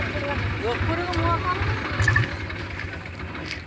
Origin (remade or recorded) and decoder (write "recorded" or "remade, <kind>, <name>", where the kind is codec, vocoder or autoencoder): recorded